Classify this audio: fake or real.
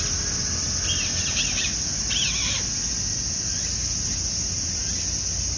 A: real